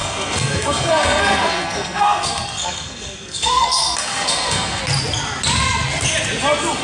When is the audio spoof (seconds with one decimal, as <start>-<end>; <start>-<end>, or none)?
0.0-4.8